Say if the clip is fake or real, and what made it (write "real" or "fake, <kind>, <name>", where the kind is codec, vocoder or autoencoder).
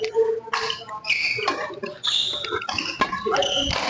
real